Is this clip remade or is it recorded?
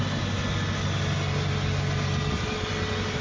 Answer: recorded